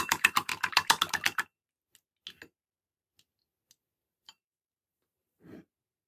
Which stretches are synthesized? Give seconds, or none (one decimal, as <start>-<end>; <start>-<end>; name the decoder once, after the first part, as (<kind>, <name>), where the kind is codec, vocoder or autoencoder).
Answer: 0.0-0.5 (vocoder, BigVGAN v2); 4.2-6.1